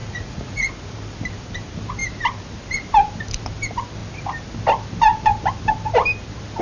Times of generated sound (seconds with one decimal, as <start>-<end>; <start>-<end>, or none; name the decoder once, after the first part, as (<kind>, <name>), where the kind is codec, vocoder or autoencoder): 0.0-0.7 (vocoder, Vocos)